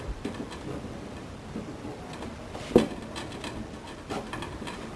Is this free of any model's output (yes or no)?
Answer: no